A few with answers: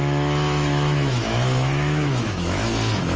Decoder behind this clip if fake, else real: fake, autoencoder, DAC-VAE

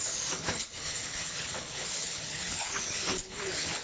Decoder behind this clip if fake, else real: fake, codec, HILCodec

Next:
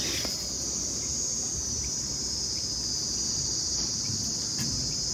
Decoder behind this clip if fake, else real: real